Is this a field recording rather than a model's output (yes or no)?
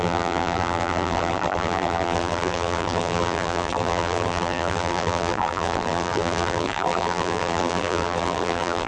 no